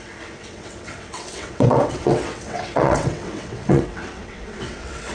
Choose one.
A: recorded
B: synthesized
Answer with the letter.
B